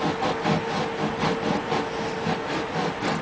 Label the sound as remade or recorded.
recorded